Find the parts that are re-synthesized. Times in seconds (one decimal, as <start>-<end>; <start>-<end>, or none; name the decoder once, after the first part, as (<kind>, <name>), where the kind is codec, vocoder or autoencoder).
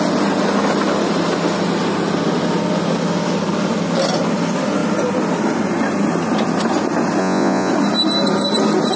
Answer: 7.2-7.7 (vocoder, Vocos)